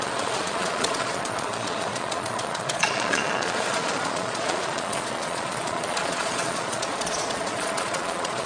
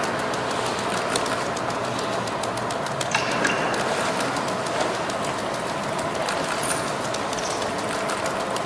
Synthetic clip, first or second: first